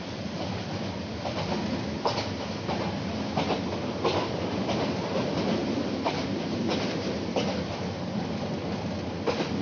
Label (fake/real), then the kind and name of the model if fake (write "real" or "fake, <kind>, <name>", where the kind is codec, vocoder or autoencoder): real